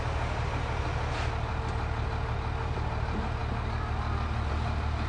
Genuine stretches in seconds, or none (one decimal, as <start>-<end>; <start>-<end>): 0.0-5.1